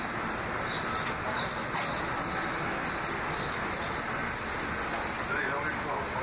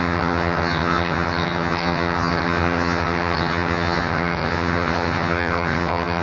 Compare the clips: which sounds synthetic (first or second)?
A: second